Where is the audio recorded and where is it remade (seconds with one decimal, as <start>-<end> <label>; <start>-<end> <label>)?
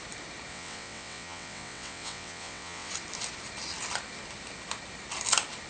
0.0-0.5 recorded; 0.5-2.9 remade; 2.9-5.7 recorded